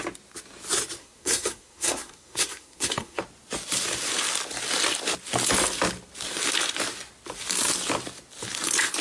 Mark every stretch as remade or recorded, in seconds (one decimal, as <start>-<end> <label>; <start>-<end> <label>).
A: 0.0-1.0 recorded; 1.0-3.2 remade; 3.2-9.0 recorded